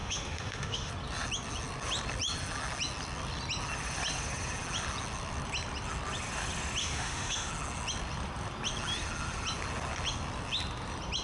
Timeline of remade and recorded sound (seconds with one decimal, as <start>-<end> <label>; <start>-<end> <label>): 0.0-0.9 remade; 0.9-6.8 recorded; 6.8-7.5 remade; 7.5-11.2 recorded